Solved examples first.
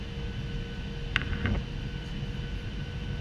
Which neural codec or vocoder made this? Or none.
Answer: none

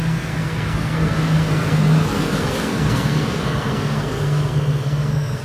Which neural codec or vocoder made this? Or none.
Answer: codec, SNAC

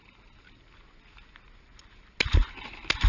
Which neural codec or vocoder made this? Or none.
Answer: none